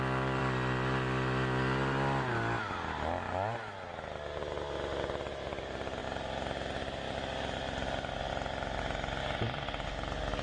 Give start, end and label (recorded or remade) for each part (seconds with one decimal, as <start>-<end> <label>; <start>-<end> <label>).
0.0-10.4 recorded